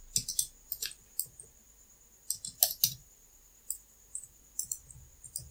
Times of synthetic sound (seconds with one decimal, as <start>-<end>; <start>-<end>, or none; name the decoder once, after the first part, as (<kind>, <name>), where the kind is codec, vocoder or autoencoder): 3.0-4.4 (vocoder, BigVGAN v2)